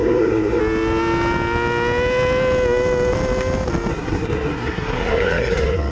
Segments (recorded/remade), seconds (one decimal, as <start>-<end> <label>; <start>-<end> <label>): 0.0-0.6 remade; 0.6-3.9 recorded; 3.9-5.9 remade